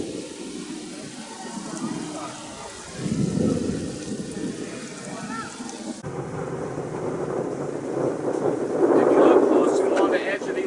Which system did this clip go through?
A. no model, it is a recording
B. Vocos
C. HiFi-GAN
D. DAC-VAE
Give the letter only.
A